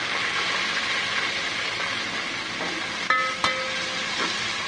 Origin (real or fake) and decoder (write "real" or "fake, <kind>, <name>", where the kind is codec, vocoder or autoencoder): real